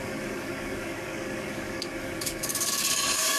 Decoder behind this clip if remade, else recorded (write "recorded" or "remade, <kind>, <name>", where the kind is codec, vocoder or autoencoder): remade, codec, DAC